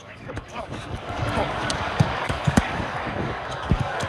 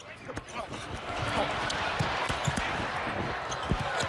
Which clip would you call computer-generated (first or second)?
first